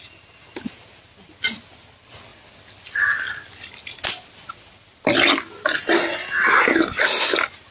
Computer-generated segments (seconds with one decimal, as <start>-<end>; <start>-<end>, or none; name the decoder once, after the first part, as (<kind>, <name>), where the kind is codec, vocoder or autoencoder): none